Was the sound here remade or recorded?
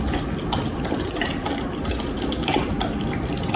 recorded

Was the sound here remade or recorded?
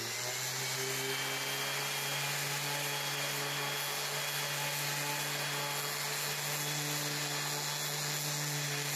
recorded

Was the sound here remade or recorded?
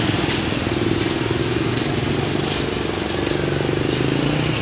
recorded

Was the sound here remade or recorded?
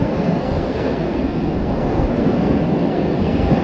remade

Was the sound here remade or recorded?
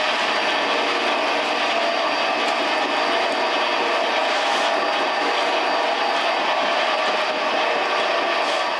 recorded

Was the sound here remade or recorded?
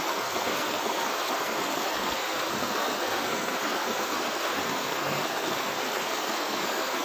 remade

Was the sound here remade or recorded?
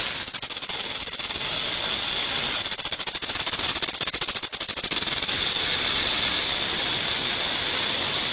recorded